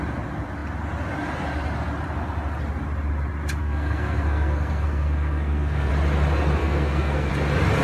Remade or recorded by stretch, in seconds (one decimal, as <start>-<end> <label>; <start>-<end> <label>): 0.0-3.6 recorded; 3.6-5.9 remade; 5.9-6.6 recorded; 6.6-7.3 remade; 7.3-7.8 recorded